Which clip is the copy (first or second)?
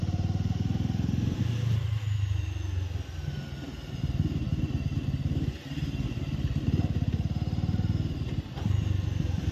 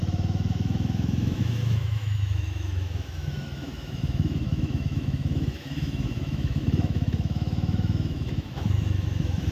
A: second